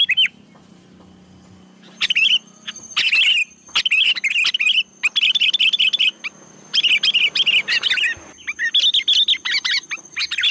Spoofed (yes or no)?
no